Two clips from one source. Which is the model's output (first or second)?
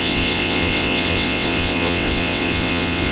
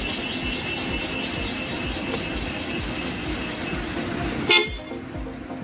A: first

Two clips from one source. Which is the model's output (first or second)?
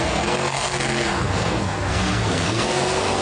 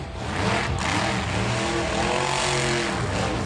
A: first